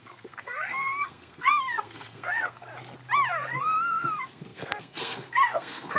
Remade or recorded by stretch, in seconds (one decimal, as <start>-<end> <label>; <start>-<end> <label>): 0.0-2.7 remade; 2.7-3.3 recorded; 3.3-6.0 remade